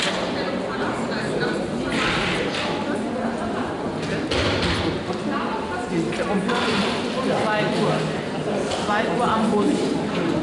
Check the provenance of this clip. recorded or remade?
recorded